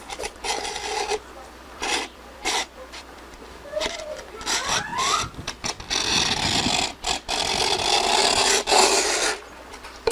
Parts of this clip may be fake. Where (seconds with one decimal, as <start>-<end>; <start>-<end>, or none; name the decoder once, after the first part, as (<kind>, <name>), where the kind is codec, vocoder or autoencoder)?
0.0-4.9 (vocoder, BigVGAN v2); 6.9-10.1